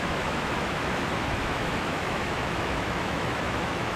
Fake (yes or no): yes